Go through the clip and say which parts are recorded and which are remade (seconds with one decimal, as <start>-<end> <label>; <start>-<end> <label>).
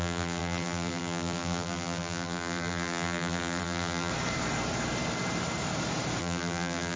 0.0-4.1 remade; 4.1-6.2 recorded; 6.2-7.0 remade